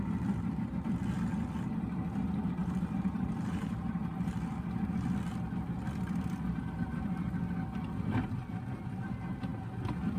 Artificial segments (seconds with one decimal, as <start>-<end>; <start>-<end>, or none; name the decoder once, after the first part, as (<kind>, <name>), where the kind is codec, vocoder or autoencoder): 2.6-4.3 (vocoder, BigVGAN v2)